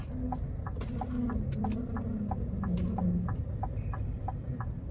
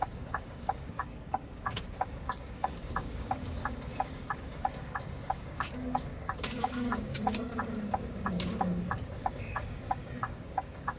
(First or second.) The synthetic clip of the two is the second